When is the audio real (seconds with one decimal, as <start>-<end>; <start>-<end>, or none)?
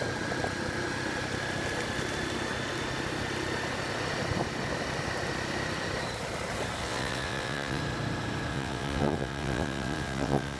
0.0-6.8; 7.8-8.5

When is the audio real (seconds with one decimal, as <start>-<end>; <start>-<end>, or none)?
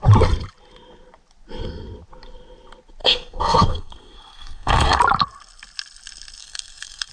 0.0-3.0; 5.0-6.4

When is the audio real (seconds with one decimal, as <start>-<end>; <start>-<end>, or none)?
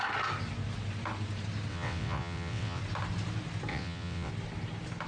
0.0-1.7; 2.8-3.7; 4.3-5.1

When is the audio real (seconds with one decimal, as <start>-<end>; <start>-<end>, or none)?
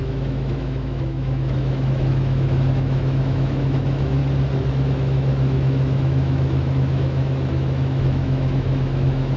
4.2-4.7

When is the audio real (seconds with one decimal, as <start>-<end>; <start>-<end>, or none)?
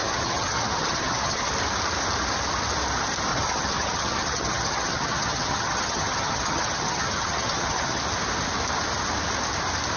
1.5-3.3; 8.0-10.0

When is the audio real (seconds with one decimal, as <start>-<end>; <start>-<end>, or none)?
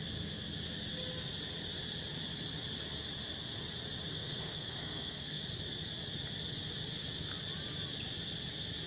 0.0-4.1; 5.4-8.9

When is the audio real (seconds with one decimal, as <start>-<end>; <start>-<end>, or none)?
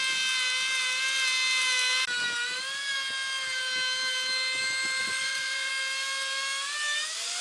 0.0-5.0; 5.7-7.4